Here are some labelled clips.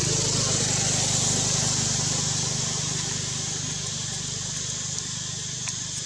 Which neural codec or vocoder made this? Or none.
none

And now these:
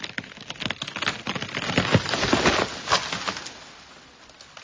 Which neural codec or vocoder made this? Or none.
none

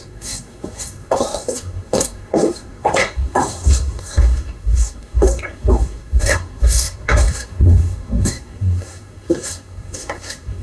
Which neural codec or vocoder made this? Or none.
codec, SNAC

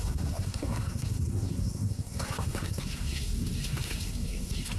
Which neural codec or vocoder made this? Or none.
codec, SNAC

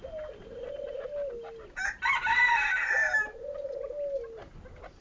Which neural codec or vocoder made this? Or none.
none